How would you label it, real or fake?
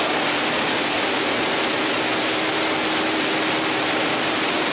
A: real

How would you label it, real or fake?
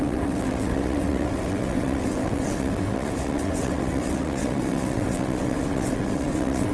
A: fake